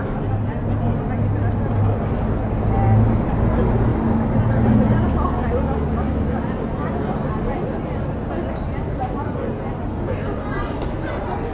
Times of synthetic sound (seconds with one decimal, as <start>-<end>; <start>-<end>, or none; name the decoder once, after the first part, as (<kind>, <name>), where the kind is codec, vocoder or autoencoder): none